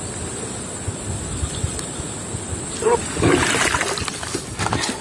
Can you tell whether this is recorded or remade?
recorded